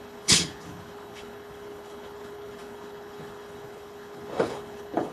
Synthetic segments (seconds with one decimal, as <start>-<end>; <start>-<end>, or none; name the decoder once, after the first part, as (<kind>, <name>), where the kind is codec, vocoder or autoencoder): 0.0-5.1 (codec, HILCodec)

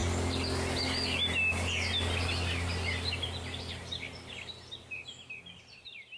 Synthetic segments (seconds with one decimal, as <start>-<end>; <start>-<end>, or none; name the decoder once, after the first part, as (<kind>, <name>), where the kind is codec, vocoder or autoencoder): none

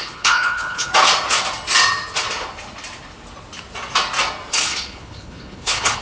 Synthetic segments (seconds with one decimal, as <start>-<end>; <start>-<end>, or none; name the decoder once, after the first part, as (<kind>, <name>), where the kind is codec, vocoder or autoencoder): 0.0-0.9 (codec, HILCodec); 4.5-6.0